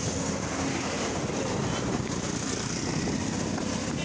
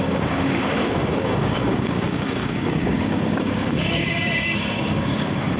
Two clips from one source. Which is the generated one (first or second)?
second